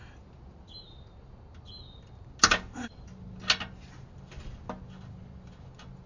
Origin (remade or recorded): recorded